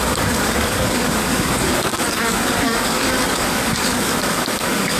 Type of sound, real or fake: fake